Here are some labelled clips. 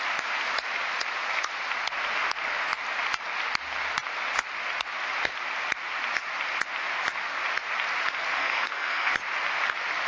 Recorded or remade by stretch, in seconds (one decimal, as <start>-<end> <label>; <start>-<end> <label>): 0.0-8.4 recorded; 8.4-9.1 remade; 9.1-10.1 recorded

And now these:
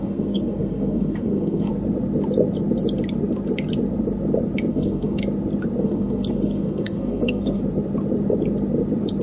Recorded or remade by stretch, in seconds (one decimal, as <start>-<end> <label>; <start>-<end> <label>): 0.0-1.7 remade; 1.7-4.7 recorded; 4.7-5.2 remade; 5.2-5.8 recorded; 5.8-7.6 remade; 7.6-9.2 recorded

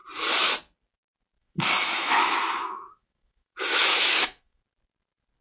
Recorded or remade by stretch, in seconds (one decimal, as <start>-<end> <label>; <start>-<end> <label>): 0.0-1.4 recorded; 1.4-4.6 remade; 4.6-5.4 recorded

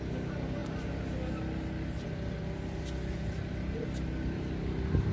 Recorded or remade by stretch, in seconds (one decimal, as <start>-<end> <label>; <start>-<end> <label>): 0.0-5.1 recorded